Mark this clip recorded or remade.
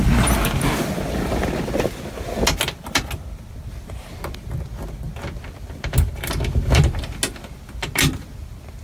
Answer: recorded